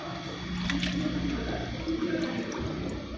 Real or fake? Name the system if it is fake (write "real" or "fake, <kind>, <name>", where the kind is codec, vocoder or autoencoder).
real